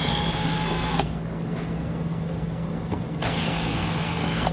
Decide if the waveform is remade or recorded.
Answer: remade